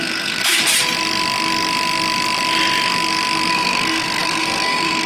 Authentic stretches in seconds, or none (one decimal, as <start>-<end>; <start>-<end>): 0.4-3.5